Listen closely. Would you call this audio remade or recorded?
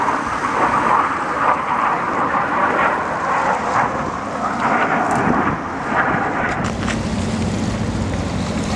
recorded